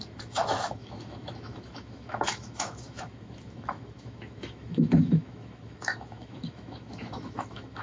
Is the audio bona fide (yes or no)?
no